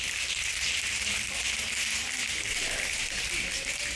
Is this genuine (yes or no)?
yes